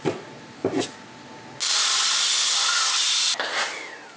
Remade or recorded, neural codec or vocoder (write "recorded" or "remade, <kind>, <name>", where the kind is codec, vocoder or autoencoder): recorded